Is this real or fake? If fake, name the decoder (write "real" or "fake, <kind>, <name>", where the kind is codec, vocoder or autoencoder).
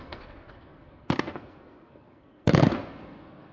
fake, codec, SNAC